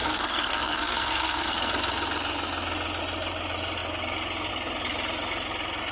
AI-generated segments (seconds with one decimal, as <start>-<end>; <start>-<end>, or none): 0.0-1.7